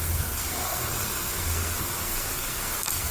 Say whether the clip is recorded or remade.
remade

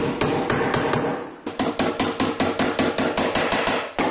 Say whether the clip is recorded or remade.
recorded